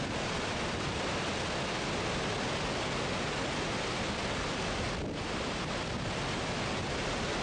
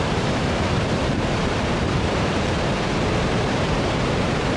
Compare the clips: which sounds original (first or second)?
first